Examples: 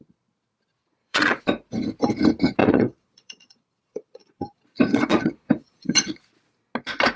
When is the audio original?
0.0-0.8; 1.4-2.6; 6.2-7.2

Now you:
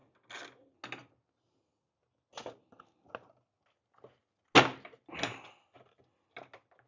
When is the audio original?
0.0-6.9

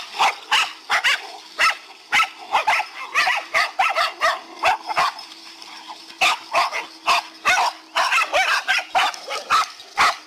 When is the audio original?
0.0-3.2; 6.0-10.3

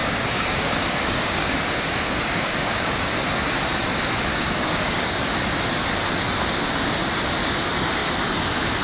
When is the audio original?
3.1-4.3; 5.2-8.8

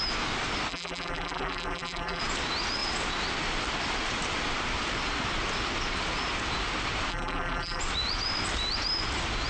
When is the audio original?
0.0-0.7; 2.2-7.1; 7.8-9.5

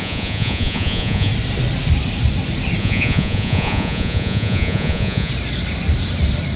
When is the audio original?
1.3-2.8; 5.3-6.6